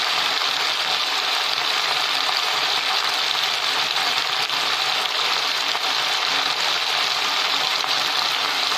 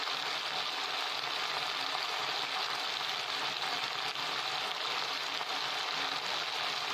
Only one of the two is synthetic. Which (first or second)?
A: first